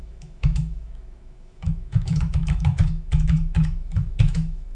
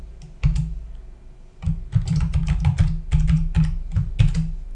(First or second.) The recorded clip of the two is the second